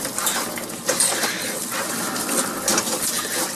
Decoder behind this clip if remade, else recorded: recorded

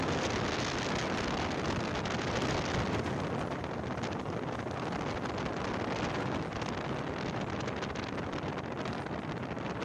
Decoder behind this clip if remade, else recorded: recorded